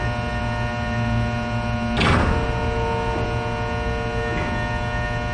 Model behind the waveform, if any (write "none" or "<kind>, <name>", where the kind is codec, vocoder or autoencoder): none